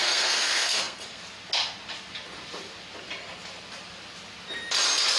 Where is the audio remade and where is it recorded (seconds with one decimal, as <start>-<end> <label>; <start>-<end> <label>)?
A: 0.0-1.2 remade; 1.2-5.2 recorded